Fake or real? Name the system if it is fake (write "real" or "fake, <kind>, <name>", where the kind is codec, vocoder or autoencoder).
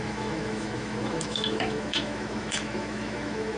fake, autoencoder, DAC-VAE